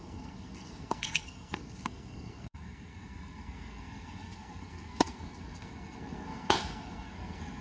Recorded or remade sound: remade